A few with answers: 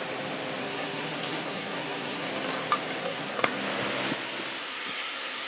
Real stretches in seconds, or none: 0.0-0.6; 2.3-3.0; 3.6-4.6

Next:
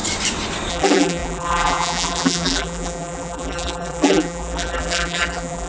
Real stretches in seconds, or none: 0.0-0.7

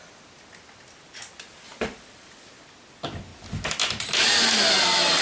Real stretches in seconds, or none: 0.0-5.2

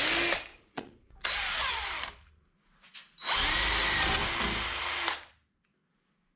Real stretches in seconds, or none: 0.0-0.5; 1.1-6.4

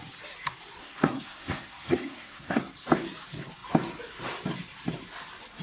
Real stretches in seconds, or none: 0.0-0.8; 2.6-5.6

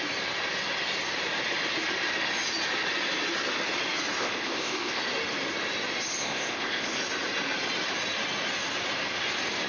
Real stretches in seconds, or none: 0.0-4.2; 5.0-6.2; 7.0-9.7